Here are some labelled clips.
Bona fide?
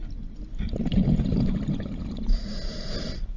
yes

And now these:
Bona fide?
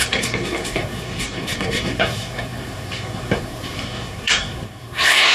no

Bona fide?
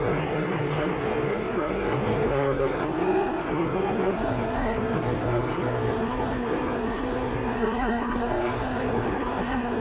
no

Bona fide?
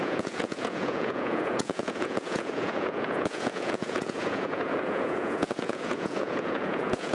no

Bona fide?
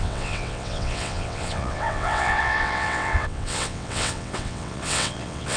no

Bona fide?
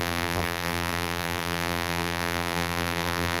no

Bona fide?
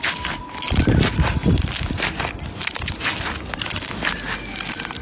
yes